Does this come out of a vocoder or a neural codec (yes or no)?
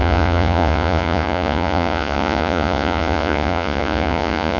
yes